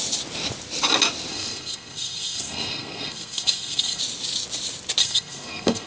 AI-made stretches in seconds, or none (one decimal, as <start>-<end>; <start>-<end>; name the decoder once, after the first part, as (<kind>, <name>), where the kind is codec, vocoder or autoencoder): 1.3-4.0 (codec, SNAC); 5.0-5.9